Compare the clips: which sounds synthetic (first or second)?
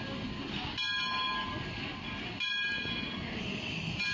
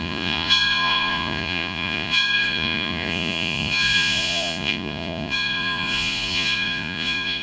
second